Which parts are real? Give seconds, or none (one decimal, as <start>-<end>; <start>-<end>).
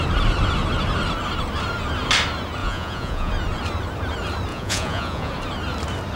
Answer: 0.0-2.6; 3.3-4.5; 5.3-6.2